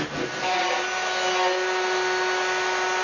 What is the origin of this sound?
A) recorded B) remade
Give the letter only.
A